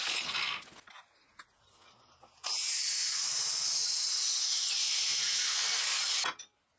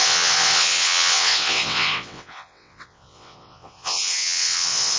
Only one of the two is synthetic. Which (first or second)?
second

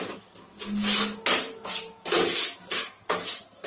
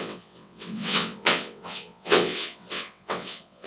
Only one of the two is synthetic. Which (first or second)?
second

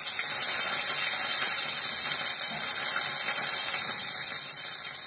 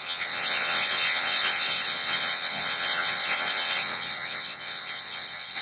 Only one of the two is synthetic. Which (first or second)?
second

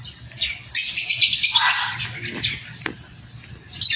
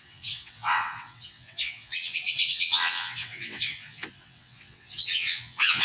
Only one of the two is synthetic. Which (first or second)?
second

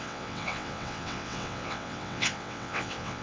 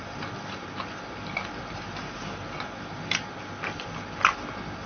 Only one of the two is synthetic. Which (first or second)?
first